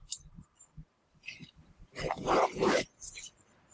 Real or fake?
fake